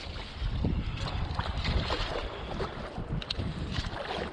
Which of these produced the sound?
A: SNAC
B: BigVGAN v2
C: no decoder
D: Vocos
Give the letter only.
B